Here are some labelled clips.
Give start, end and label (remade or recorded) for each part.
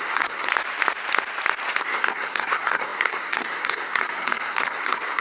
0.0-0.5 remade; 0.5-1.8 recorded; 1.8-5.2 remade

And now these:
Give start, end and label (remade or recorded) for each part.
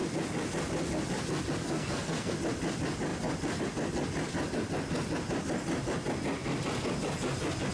0.0-1.6 recorded; 1.6-2.3 remade; 2.3-7.7 recorded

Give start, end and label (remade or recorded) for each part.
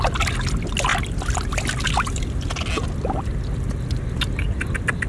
0.0-5.1 recorded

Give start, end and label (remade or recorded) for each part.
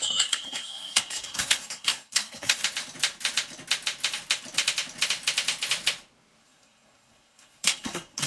0.0-2.6 remade; 2.6-6.4 recorded; 6.4-8.3 remade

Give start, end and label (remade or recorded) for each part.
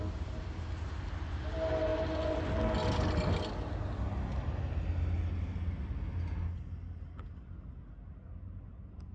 0.0-9.1 recorded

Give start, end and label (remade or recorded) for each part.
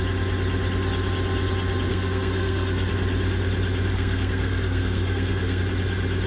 0.0-1.9 recorded; 1.9-2.9 remade; 2.9-3.9 recorded; 3.9-5.6 remade; 5.6-6.3 recorded